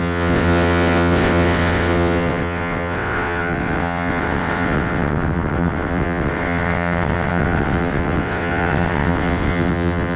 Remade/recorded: remade